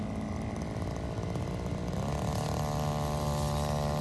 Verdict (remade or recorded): recorded